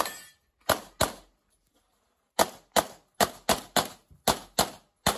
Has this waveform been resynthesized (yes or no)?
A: no